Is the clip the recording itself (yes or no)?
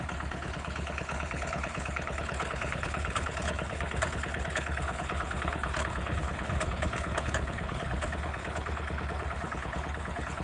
no